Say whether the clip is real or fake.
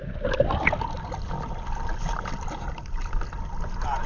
real